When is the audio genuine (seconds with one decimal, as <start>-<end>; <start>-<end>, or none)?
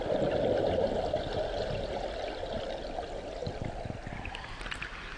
0.0-5.2